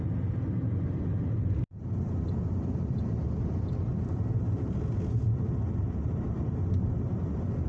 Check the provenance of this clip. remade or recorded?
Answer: recorded